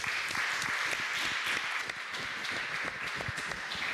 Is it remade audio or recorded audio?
recorded